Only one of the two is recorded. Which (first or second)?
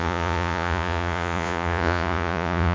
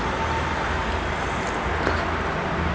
second